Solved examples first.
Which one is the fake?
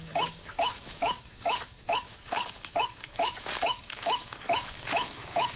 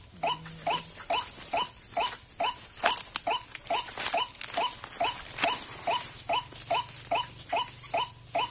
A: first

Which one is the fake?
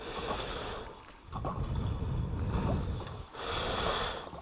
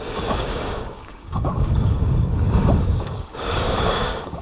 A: second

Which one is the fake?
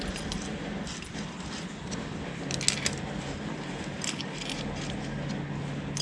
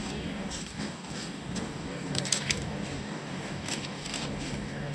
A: second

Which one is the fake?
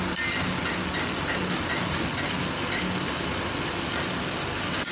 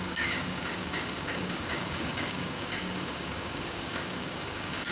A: second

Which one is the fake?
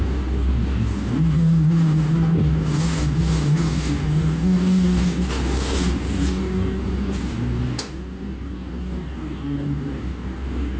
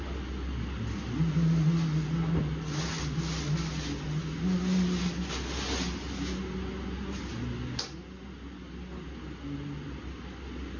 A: first